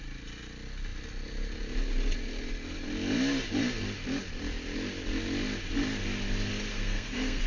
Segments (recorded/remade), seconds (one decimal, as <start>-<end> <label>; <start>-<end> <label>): 0.0-6.7 recorded; 6.7-7.5 remade